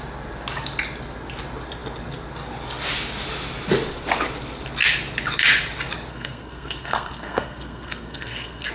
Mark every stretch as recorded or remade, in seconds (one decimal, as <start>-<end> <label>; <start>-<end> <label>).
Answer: 0.0-6.1 recorded; 6.1-8.7 remade